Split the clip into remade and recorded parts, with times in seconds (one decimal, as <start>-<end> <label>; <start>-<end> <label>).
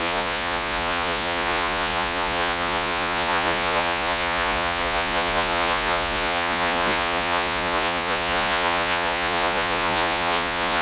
0.0-10.8 remade